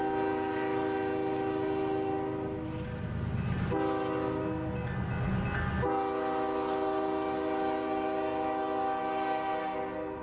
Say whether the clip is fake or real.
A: real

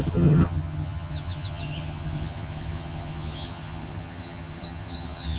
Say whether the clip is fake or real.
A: fake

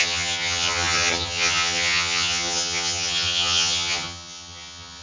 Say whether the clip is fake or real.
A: fake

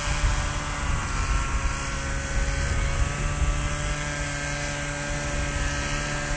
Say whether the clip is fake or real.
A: real